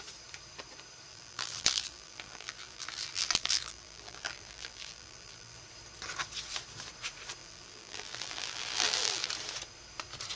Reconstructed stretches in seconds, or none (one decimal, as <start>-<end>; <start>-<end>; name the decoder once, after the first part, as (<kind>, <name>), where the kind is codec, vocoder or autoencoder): 1.1-5.6 (vocoder, BigVGAN v2); 7.4-9.3